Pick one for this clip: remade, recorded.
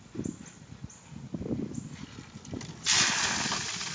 recorded